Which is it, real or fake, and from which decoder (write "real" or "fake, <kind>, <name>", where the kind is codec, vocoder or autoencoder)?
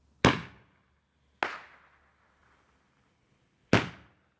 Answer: real